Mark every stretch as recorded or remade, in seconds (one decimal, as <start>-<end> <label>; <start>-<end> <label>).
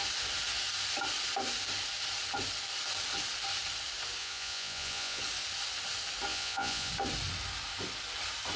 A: 0.0-4.2 recorded; 4.2-5.2 remade; 5.2-6.3 recorded; 6.3-6.9 remade; 6.9-8.6 recorded